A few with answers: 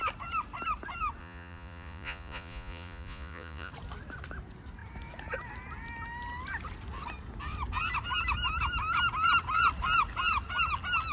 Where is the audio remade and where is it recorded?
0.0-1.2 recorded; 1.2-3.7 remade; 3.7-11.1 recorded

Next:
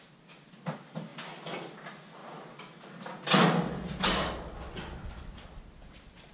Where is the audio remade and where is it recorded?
0.0-6.3 recorded

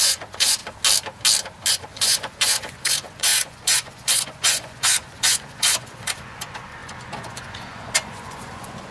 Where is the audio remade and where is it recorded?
0.0-0.6 remade; 0.6-1.7 recorded; 1.7-8.9 remade